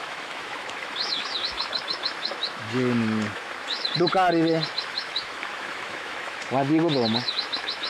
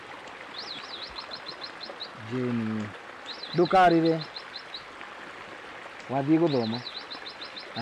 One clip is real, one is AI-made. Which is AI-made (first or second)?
first